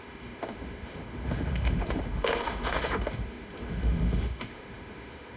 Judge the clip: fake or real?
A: fake